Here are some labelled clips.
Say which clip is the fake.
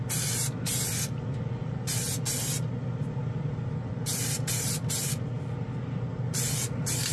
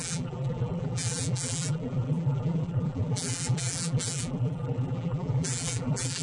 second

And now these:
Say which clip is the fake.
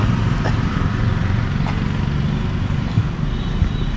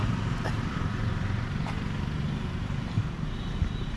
second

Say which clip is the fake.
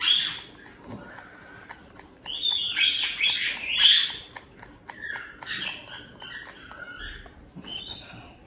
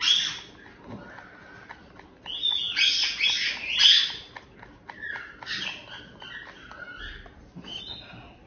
first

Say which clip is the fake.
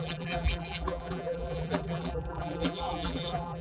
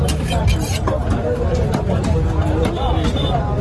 first